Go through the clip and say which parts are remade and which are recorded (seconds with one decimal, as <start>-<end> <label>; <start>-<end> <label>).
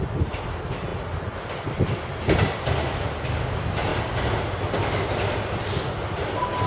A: 0.0-6.7 recorded